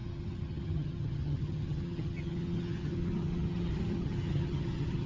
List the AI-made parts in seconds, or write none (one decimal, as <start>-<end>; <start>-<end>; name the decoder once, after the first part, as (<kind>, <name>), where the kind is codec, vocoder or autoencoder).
0.0-5.1 (vocoder, HiFi-GAN)

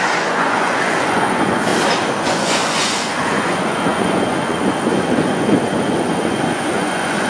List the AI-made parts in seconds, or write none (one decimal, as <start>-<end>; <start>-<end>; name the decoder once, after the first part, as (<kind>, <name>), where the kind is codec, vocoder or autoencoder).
0.0-1.7 (vocoder, Vocos); 2.2-7.3

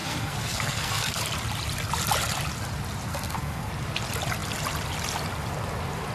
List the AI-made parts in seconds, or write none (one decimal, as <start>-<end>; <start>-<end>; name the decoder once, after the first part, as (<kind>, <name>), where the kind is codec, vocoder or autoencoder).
0.0-1.2 (codec, SNAC); 3.1-3.7

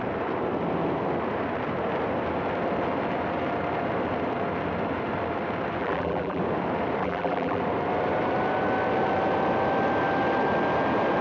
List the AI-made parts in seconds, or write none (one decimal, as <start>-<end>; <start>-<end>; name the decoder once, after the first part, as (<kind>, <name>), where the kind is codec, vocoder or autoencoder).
5.8-6.4 (vocoder, BigVGAN v2); 7.0-7.6

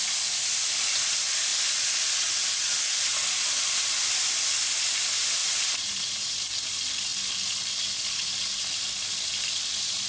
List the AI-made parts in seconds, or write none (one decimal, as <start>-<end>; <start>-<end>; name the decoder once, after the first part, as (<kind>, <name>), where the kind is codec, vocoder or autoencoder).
5.4-6.4 (vocoder, Vocos)

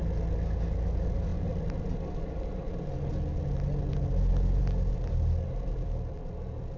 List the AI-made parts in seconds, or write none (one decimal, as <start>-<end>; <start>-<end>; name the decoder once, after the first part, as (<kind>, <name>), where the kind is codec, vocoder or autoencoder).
none

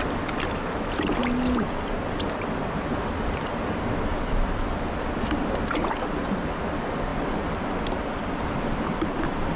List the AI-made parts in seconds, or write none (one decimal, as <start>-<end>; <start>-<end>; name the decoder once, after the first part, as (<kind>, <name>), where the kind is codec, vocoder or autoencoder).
none

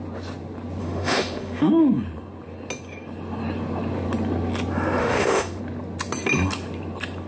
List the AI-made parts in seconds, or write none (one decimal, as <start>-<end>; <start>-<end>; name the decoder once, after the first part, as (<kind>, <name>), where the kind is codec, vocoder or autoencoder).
0.8-1.7 (autoencoder, DAC-VAE); 5.0-5.6